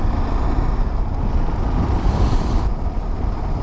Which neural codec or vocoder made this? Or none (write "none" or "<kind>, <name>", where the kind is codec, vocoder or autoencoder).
none